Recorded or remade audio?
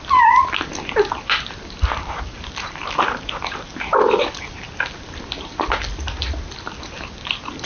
recorded